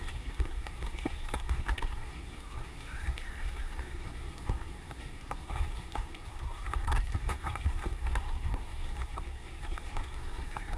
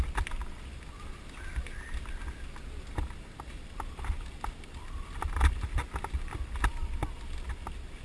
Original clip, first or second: second